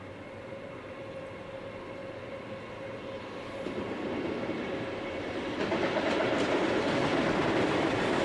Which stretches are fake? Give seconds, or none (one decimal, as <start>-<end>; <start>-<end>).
none